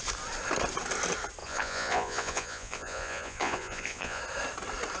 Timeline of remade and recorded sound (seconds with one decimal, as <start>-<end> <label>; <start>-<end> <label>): 0.0-1.4 recorded; 1.4-4.2 remade; 4.2-5.0 recorded